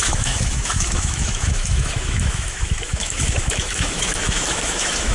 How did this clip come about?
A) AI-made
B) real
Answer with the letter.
A